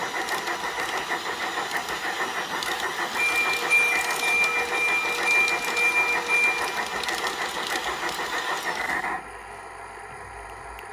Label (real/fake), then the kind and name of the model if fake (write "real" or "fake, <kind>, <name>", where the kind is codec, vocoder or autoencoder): real